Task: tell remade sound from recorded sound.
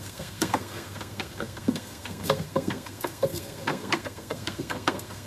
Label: remade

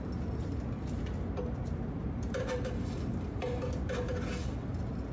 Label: recorded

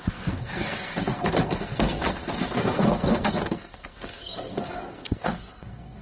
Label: remade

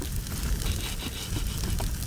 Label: recorded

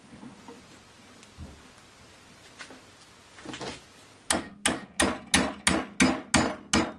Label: recorded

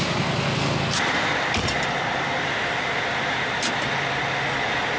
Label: recorded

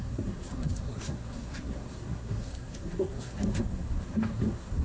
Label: remade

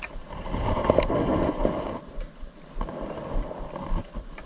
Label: recorded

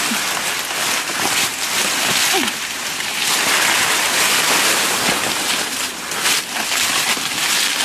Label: recorded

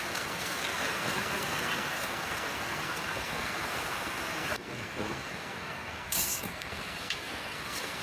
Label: remade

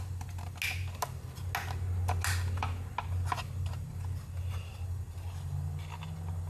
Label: recorded